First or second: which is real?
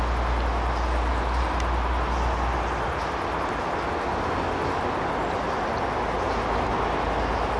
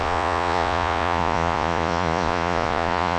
first